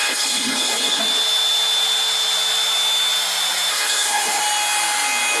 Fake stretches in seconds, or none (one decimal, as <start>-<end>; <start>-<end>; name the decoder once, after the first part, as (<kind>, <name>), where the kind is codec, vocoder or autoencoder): 0.0-1.0 (codec, HILCodec); 3.7-4.4